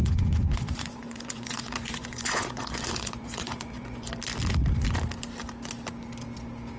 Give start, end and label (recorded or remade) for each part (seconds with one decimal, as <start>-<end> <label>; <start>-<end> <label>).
0.0-4.1 remade; 4.1-6.8 recorded